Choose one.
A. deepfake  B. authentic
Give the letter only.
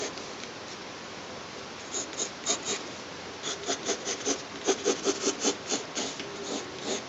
B